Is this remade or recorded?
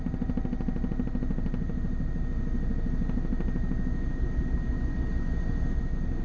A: recorded